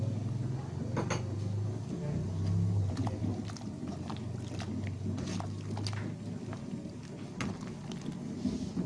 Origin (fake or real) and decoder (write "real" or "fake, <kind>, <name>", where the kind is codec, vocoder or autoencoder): real